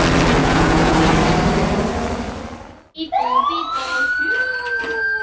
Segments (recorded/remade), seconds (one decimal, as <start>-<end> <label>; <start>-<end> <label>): 0.0-0.4 recorded; 0.4-1.0 remade; 1.0-5.2 recorded

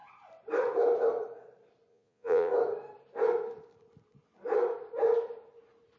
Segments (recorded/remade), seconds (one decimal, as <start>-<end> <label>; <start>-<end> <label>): 0.0-1.9 recorded; 1.9-2.5 remade; 2.5-6.0 recorded

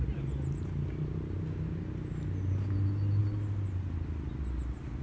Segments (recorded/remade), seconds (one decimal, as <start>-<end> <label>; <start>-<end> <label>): 0.0-5.0 recorded

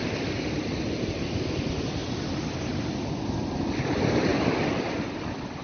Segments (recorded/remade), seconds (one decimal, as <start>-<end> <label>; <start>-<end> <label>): 0.0-0.8 recorded; 0.8-2.0 remade; 2.0-3.8 recorded; 3.8-4.3 remade; 4.3-5.6 recorded

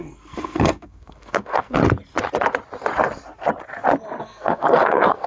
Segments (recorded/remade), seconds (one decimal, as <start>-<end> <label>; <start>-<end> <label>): 0.0-1.8 remade; 1.8-4.2 recorded; 4.2-5.3 remade

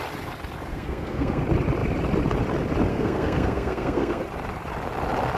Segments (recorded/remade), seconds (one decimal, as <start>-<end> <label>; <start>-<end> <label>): 0.0-0.7 recorded; 0.7-1.4 remade; 1.4-2.9 recorded; 2.9-4.2 remade; 4.2-5.4 recorded

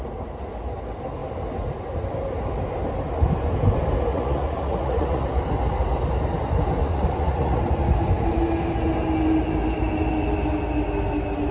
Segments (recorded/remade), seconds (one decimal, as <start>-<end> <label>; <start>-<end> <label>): 0.0-4.1 recorded; 4.1-5.4 remade; 5.4-6.8 recorded; 6.8-7.6 remade; 7.6-11.5 recorded

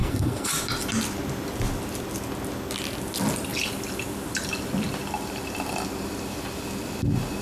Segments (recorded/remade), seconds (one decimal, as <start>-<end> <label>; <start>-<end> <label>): 0.0-0.5 remade; 0.5-7.4 recorded